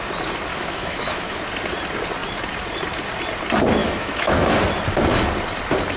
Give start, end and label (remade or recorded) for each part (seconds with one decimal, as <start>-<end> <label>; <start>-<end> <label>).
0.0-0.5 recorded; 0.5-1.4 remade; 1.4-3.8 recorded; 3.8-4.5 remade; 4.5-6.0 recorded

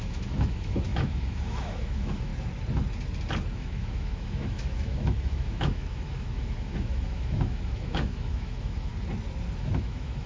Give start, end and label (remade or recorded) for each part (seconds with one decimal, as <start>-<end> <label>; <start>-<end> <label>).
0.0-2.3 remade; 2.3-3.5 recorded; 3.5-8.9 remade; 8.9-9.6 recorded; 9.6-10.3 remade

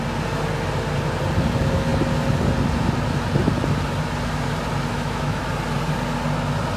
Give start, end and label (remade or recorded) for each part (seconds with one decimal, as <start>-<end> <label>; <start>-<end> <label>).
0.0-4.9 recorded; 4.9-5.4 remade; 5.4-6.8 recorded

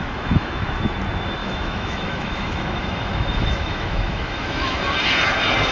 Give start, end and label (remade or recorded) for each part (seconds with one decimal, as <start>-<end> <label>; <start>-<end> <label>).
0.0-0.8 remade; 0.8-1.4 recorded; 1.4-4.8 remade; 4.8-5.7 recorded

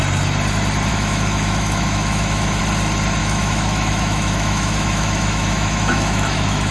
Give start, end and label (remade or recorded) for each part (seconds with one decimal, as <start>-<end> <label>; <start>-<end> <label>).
0.0-0.9 recorded; 0.9-2.6 remade; 2.6-3.2 recorded; 3.2-6.7 remade